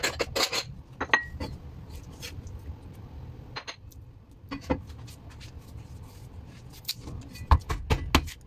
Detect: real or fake real